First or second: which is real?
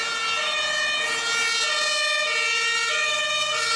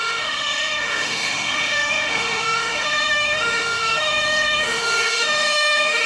first